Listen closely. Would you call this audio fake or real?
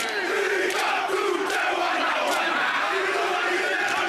fake